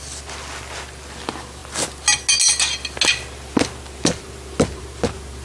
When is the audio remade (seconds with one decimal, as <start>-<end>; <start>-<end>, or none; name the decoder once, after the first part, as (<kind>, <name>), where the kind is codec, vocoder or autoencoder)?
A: none